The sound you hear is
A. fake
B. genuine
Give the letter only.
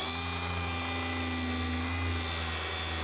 B